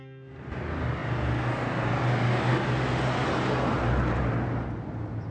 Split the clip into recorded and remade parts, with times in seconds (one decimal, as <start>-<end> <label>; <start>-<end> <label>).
0.0-5.3 recorded